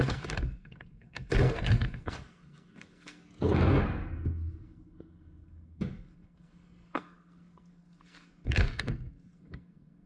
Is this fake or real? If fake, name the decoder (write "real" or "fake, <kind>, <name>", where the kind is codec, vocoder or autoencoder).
fake, codec, SNAC